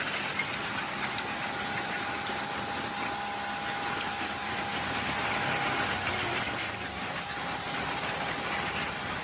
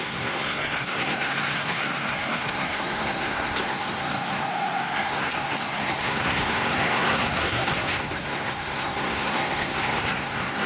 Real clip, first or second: first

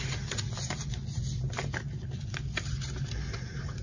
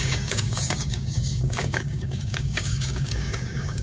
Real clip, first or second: first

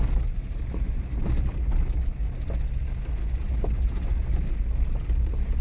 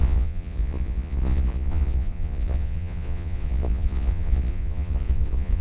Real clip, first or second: first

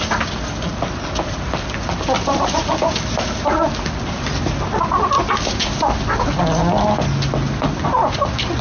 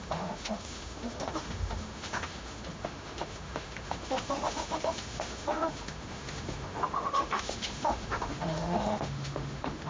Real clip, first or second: first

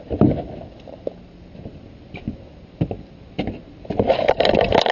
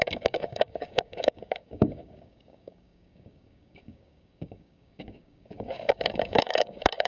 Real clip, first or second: first